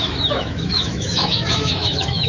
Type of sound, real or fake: fake